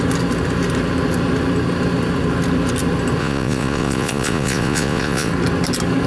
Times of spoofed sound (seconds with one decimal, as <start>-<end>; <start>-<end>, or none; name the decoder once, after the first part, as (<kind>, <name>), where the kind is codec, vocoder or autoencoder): 3.2-5.3 (vocoder, Vocos)